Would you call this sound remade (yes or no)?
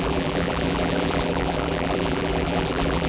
yes